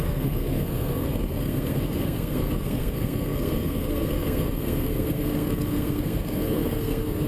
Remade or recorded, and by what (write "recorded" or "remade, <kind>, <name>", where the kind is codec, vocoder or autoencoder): remade, codec, SNAC